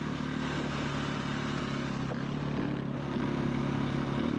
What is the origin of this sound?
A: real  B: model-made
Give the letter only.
A